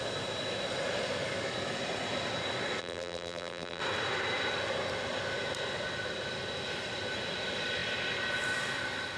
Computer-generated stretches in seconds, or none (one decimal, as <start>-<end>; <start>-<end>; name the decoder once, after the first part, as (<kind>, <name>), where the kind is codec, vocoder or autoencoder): 2.8-3.8 (vocoder, BigVGAN v2)